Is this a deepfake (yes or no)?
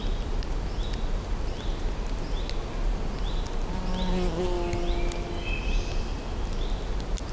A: no